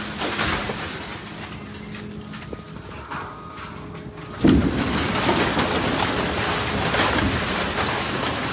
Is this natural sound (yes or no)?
yes